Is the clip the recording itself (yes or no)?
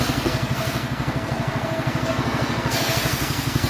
no